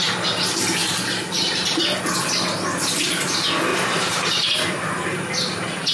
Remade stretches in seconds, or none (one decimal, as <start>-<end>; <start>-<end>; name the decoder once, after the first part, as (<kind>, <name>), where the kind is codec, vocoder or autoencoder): 0.8-2.0 (vocoder, BigVGAN v2); 3.7-4.3